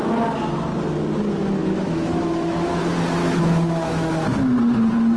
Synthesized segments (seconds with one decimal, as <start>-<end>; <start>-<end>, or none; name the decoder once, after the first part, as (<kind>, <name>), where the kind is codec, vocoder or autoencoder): 1.6-2.8 (autoencoder, DAC-VAE); 3.2-4.1

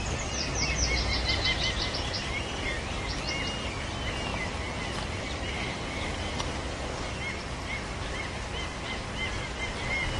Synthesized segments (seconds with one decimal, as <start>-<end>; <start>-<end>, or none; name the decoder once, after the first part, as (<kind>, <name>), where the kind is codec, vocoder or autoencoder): 4.3-5.8 (vocoder, BigVGAN v2)

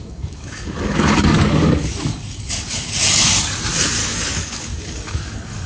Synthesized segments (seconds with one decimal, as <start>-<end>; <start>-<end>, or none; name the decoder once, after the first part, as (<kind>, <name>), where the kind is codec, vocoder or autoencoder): 0.0-3.4 (codec, DAC); 4.0-5.7